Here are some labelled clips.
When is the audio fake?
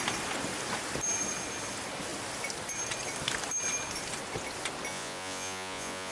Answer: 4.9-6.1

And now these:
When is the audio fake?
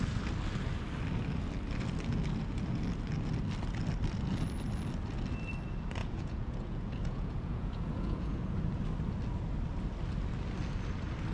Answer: 6.0-8.6